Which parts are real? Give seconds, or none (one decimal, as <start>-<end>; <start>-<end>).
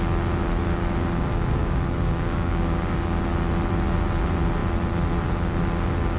0.0-1.3; 3.2-6.2